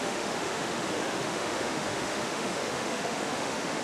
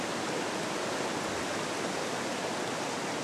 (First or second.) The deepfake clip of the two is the first